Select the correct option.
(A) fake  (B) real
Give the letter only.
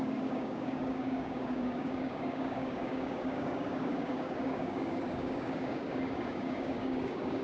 A